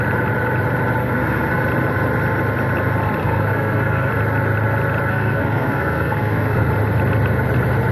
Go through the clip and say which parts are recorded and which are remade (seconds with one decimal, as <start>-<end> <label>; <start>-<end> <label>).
0.0-1.0 recorded; 1.0-1.6 remade; 1.6-3.2 recorded; 3.2-4.1 remade; 4.1-5.1 recorded; 5.1-6.7 remade; 6.7-7.9 recorded